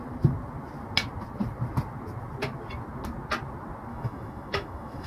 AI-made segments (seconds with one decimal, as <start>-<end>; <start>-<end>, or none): 3.9-5.1